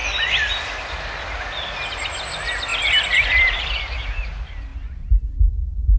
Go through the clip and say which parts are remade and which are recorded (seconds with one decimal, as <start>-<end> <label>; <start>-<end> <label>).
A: 0.0-6.0 recorded